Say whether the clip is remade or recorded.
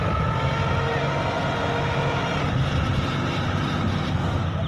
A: recorded